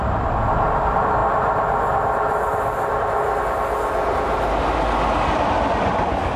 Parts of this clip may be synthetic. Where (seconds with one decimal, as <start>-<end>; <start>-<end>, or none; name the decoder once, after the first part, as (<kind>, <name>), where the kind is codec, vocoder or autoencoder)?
none